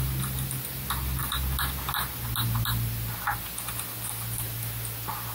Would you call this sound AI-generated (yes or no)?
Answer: no